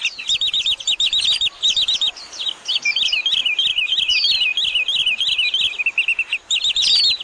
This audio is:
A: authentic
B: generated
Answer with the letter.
A